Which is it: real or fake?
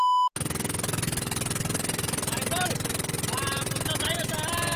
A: real